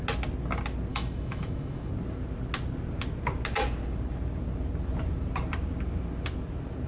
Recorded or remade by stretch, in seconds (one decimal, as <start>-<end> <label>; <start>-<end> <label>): 0.0-0.9 recorded; 0.9-1.9 remade; 1.9-6.9 recorded